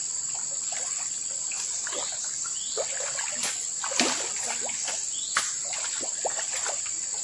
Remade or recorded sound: recorded